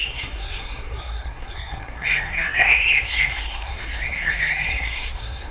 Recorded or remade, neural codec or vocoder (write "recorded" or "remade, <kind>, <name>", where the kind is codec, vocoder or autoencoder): remade, codec, SNAC